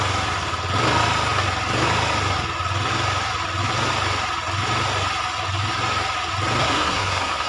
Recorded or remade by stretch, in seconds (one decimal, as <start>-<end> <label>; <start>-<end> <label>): 0.0-6.6 recorded; 6.6-7.5 remade